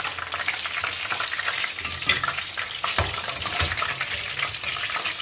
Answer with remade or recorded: recorded